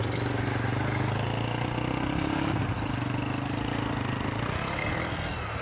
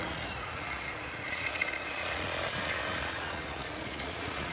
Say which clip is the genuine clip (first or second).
first